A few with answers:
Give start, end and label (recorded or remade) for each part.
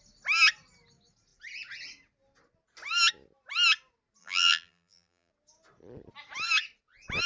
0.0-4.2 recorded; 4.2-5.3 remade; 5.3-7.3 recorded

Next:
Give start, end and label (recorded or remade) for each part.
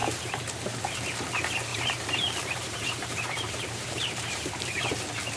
0.0-0.8 remade; 0.8-1.7 recorded; 1.7-4.9 remade; 4.9-5.4 recorded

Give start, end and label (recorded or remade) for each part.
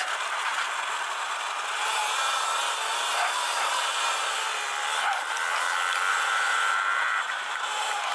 0.0-6.1 recorded; 6.1-8.1 remade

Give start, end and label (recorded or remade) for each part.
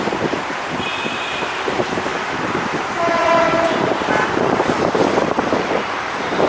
0.0-6.5 remade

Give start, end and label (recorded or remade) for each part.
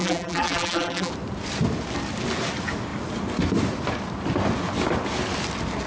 0.0-1.1 remade; 1.1-5.9 recorded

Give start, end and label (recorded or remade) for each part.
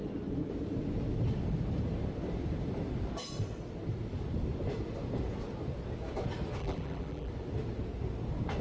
0.0-6.6 recorded; 6.6-7.3 remade; 7.3-8.6 recorded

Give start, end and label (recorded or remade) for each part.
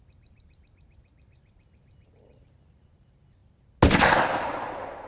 0.0-3.4 remade; 3.4-4.3 recorded; 4.3-5.1 remade